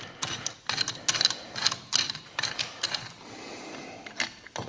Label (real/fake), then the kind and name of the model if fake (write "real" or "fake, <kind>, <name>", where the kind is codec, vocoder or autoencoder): real